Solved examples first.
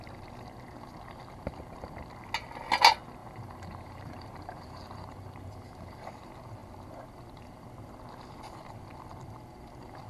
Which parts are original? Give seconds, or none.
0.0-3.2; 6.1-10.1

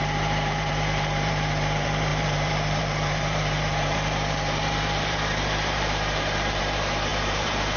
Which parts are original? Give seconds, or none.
none

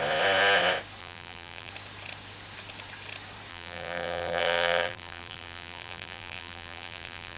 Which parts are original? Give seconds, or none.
0.0-1.0; 1.7-3.5

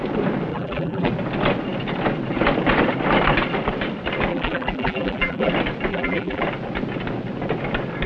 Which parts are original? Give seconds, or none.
0.0-0.5; 1.1-4.3; 5.5-5.9; 6.4-8.1

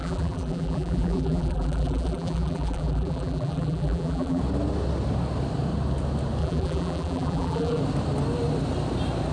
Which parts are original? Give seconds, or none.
4.4-6.4; 7.8-9.3

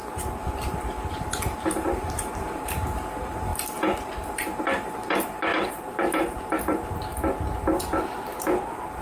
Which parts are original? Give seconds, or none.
0.0-1.1; 3.5-4.6; 7.1-7.8

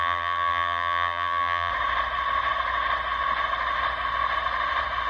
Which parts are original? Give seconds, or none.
1.7-5.1

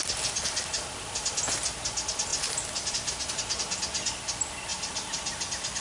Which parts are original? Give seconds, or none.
0.0-4.7